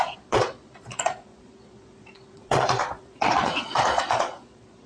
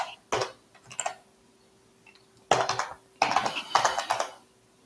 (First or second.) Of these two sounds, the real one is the second